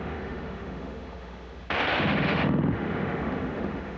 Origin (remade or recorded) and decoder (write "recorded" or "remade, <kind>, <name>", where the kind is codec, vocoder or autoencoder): remade, autoencoder, DAC-VAE